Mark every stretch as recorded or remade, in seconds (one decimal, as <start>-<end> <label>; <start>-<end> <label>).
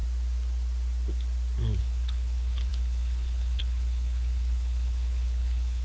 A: 0.0-1.8 recorded; 1.8-5.8 remade